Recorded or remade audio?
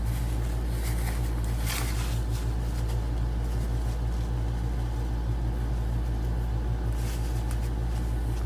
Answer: recorded